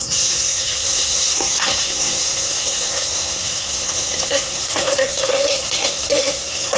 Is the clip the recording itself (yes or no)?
no